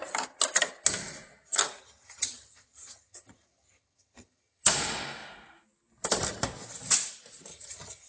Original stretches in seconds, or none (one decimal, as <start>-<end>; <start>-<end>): 0.0-1.8; 4.7-7.5